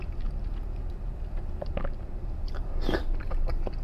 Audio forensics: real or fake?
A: real